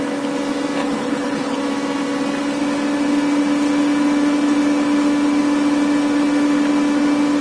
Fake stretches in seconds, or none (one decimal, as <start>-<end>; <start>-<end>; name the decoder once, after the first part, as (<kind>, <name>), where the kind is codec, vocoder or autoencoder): 0.8-1.6 (codec, HILCodec)